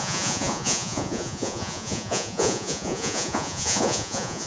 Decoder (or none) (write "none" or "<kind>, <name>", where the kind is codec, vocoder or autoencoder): vocoder, Vocos